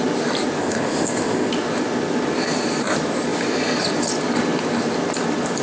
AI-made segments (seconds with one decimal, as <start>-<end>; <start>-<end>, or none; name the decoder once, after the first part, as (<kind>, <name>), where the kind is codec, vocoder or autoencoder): 0.6-1.5 (codec, ZipCodec)